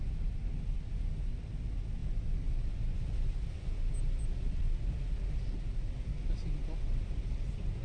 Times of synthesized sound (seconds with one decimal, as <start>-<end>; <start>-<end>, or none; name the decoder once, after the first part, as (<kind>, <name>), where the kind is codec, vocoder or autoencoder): none